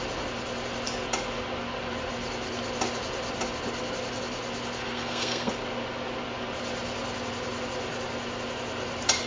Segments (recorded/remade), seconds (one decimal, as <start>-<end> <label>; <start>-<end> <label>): 0.0-4.8 recorded; 4.8-5.5 remade; 5.5-9.3 recorded